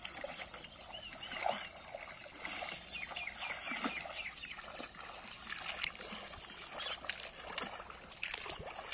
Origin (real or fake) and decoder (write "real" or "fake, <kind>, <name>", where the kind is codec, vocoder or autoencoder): real